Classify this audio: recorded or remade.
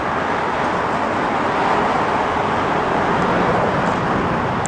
recorded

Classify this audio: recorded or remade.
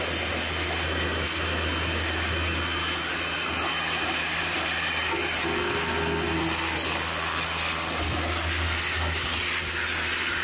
recorded